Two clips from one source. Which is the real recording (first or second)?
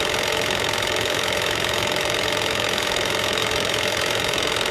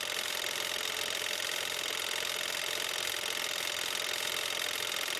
second